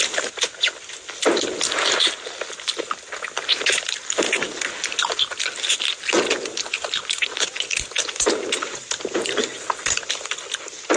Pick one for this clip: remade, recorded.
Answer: recorded